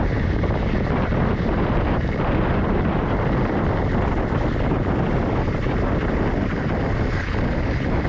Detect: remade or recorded remade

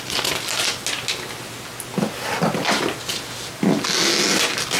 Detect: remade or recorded recorded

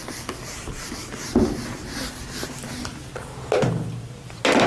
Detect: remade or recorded recorded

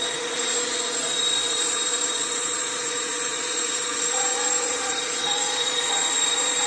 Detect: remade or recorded remade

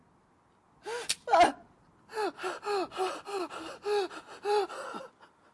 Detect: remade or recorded recorded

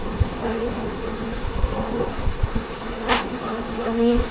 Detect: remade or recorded remade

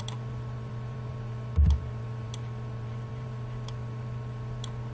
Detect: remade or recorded remade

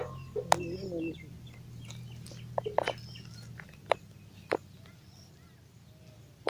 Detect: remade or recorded recorded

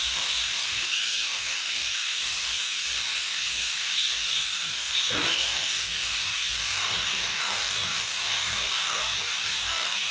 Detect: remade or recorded remade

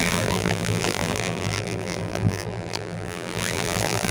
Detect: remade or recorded remade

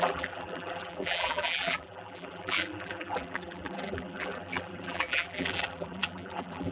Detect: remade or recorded remade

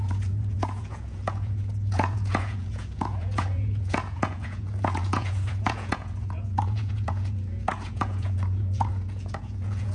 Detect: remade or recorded remade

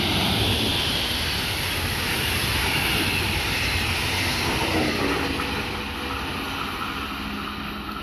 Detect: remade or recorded recorded